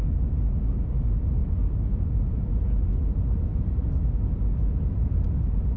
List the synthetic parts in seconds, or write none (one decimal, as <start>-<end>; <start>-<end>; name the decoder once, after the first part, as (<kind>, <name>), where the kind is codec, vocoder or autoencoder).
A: none

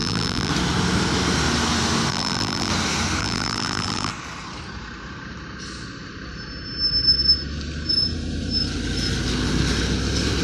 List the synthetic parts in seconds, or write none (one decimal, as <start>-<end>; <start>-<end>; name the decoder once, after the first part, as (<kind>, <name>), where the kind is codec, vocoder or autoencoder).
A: 0.0-0.5 (vocoder, BigVGAN v2); 2.1-2.7; 3.2-4.1

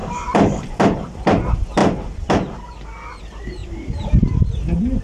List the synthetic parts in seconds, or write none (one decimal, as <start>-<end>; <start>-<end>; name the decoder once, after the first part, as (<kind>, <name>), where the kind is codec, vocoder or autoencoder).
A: 0.0-0.8 (vocoder, BigVGAN v2)

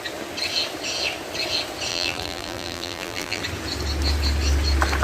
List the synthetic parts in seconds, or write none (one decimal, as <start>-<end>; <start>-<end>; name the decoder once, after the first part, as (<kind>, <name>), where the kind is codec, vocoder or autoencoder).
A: 1.9-3.4 (vocoder, BigVGAN v2)

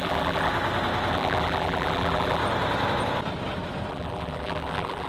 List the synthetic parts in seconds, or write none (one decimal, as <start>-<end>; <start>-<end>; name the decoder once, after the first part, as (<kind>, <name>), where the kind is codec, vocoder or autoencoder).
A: 0.0-0.5 (vocoder, BigVGAN v2); 1.1-2.4; 3.9-5.1

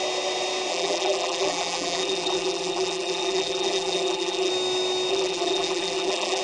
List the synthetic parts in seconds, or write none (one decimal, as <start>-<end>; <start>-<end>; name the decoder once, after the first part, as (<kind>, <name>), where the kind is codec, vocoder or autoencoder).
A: 0.7-4.5 (vocoder, BigVGAN v2); 5.1-6.4